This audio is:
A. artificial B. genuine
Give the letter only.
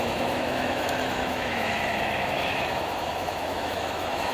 A